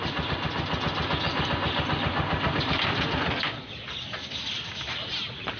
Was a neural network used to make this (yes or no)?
no